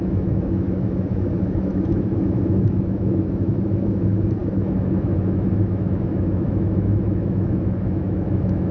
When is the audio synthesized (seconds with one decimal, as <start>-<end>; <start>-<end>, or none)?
0.0-8.7